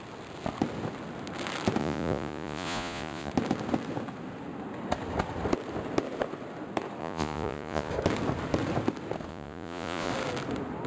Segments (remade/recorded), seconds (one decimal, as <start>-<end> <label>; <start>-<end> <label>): 0.0-1.8 recorded; 1.8-3.3 remade; 3.3-7.0 recorded; 7.0-7.9 remade; 7.9-9.3 recorded; 9.3-10.1 remade; 10.1-10.9 recorded